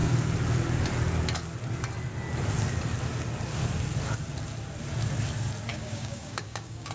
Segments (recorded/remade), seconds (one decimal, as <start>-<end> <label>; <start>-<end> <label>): 0.0-5.7 recorded; 5.7-6.9 remade